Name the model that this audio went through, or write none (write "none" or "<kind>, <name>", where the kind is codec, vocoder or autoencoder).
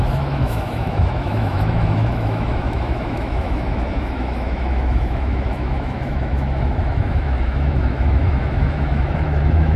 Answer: autoencoder, DAC-VAE